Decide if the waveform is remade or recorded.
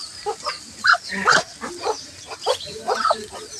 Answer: remade